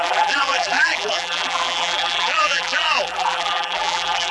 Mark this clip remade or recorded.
remade